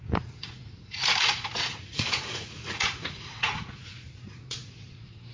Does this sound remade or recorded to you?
remade